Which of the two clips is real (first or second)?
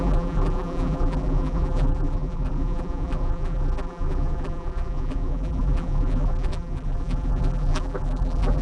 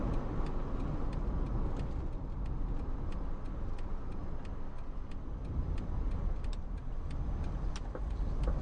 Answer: second